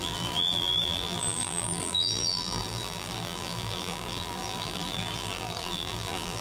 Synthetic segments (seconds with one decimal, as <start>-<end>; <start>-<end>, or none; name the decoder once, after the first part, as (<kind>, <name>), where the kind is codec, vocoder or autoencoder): 0.0-6.4 (vocoder, BigVGAN v2)